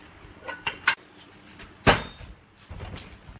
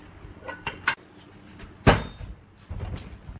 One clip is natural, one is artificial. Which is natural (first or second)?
second